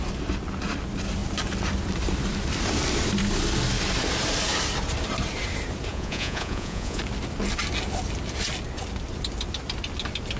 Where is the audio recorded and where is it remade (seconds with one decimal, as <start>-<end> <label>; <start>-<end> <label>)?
0.0-5.9 recorded; 5.9-7.0 remade; 7.0-10.4 recorded

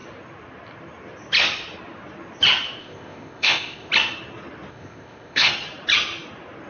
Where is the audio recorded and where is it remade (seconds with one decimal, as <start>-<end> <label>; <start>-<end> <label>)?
0.0-2.8 recorded; 2.8-3.9 remade; 3.9-4.7 recorded; 4.7-5.5 remade; 5.5-6.7 recorded